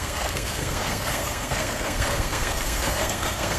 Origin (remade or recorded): remade